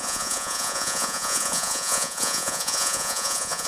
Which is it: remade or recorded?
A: remade